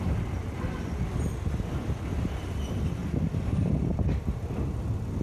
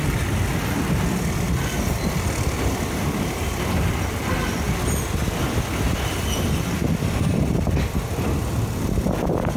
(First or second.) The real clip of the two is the second